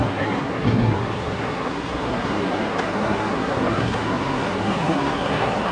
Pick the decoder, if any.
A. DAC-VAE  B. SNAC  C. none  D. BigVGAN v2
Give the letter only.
B